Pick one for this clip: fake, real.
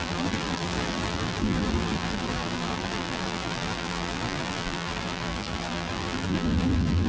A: fake